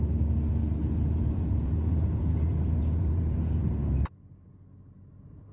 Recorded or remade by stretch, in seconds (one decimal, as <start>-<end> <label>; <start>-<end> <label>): 0.0-0.8 recorded; 0.8-3.7 remade; 3.7-5.5 recorded